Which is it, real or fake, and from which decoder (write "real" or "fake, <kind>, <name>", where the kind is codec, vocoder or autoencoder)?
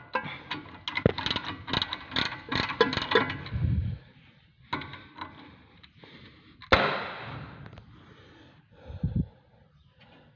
real